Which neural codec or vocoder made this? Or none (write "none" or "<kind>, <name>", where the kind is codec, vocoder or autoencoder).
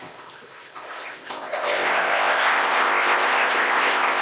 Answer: codec, ZipCodec